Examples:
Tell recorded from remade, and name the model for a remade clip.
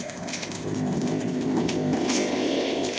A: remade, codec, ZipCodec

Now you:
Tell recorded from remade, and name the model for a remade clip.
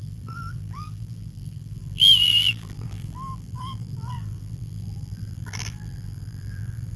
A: remade, vocoder, BigVGAN v2